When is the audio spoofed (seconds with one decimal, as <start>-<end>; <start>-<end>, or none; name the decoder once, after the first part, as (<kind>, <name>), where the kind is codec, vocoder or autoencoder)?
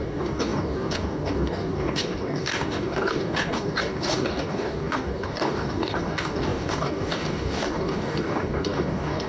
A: 0.0-9.3 (codec, DAC)